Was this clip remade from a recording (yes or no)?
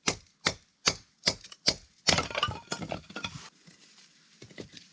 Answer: no